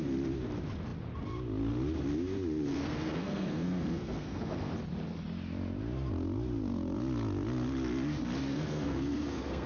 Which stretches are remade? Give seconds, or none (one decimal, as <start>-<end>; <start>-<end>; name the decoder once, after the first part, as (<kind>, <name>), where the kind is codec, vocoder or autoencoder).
2.7-4.7 (codec, SNAC); 8.4-9.7